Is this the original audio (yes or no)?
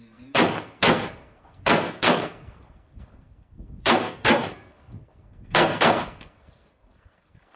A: no